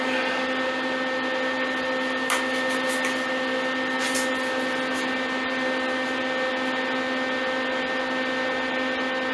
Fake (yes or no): no